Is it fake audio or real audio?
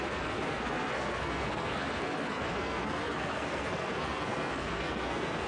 fake